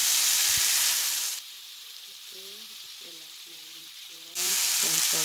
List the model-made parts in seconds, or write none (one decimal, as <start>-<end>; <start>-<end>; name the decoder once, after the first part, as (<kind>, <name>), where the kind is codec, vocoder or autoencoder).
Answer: 0.0-5.2 (vocoder, BigVGAN v2)